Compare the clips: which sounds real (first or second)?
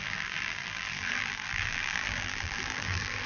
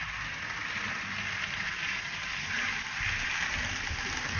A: second